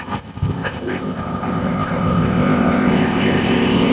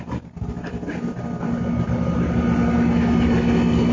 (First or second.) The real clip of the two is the second